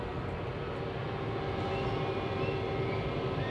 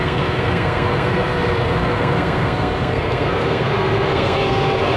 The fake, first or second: second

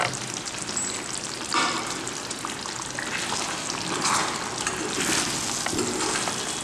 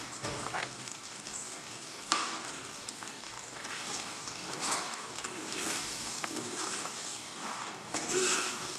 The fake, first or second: second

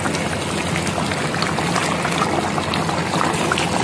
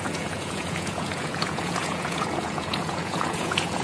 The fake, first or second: second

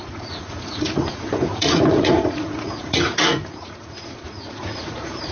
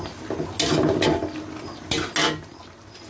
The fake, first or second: first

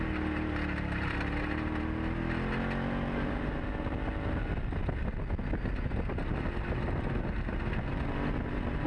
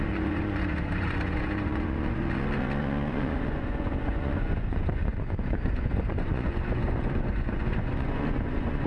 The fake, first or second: second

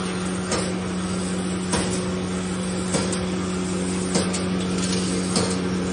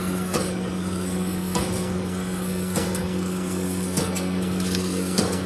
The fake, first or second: second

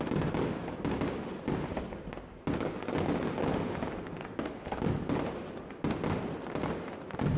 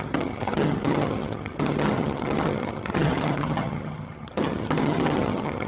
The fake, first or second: second